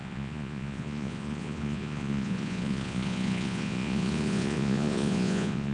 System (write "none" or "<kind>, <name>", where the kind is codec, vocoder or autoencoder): vocoder, Vocos